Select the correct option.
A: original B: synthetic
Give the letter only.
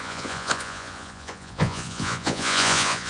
B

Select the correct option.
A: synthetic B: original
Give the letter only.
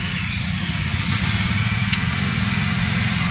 A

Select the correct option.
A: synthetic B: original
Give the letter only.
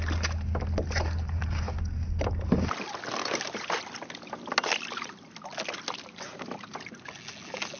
B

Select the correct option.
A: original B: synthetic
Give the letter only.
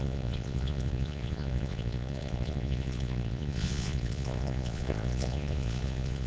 B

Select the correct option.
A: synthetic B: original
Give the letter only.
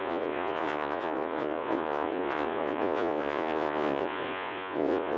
A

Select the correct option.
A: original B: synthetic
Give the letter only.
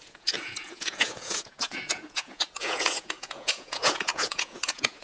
B